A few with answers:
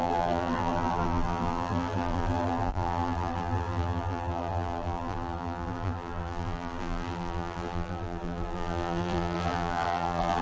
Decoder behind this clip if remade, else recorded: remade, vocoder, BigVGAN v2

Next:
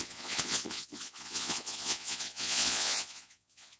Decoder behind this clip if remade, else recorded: remade, vocoder, Vocos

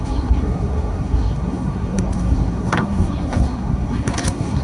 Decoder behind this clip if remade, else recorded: remade, codec, SNAC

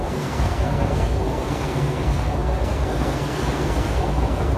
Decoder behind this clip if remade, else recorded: remade, codec, SNAC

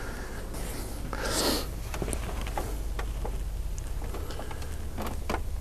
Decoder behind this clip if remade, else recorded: recorded